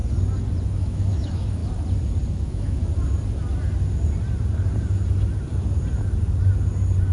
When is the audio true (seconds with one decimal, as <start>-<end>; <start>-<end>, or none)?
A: 0.0-0.8; 1.6-2.3; 2.8-7.1